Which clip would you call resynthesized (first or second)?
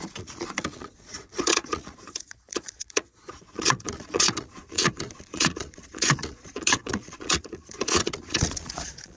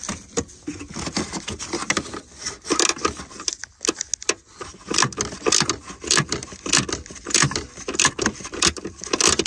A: first